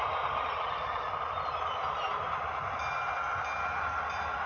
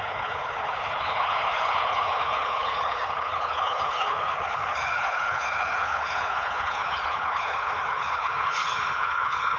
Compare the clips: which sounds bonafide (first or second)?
first